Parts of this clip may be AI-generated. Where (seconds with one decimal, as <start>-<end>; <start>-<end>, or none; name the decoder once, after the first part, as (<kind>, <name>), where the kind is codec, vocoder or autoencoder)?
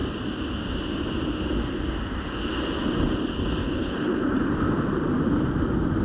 3.6-4.2 (codec, HILCodec)